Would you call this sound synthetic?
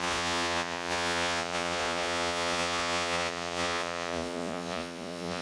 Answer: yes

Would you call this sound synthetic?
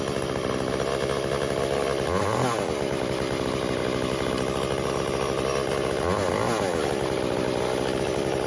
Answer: no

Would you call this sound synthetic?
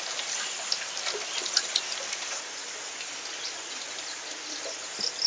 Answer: no